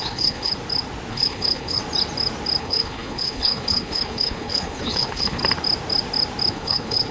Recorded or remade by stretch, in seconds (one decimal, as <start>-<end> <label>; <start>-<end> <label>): 0.0-0.5 remade; 0.5-1.1 recorded; 1.1-1.8 remade; 1.8-2.6 recorded; 2.6-5.4 remade; 5.4-6.5 recorded; 6.5-7.1 remade